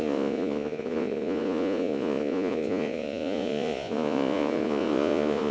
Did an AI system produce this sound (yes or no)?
yes